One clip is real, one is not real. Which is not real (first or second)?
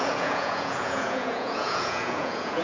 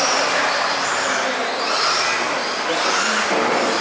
first